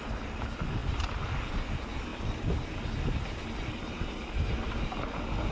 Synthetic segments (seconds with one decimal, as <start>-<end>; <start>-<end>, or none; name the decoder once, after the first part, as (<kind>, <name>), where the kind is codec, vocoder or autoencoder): none